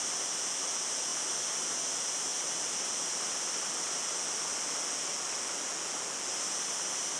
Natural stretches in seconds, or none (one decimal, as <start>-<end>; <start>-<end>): 0.0-7.2